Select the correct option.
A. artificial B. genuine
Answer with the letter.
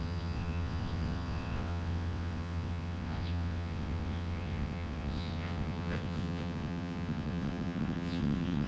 A